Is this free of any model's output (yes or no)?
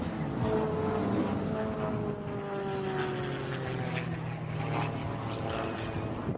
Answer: yes